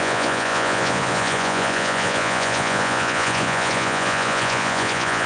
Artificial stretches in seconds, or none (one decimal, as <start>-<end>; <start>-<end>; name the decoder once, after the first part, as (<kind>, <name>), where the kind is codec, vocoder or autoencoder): 0.0-5.3 (vocoder, Vocos)